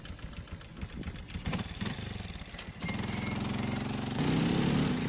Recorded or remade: recorded